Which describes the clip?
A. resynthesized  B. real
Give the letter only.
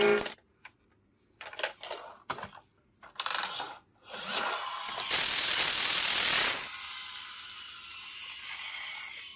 B